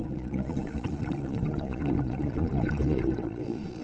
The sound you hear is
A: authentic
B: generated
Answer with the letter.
B